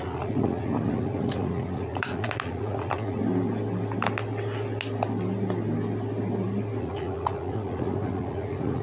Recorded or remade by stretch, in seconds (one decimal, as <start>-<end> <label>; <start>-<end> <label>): 0.0-3.2 remade; 3.2-6.8 recorded; 6.8-8.8 remade